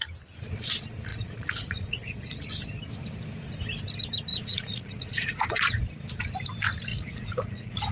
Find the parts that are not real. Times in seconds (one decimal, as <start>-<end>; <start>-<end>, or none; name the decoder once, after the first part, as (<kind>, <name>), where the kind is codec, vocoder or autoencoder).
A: 1.1-2.4 (vocoder, Vocos); 4.3-5.8; 6.9-7.9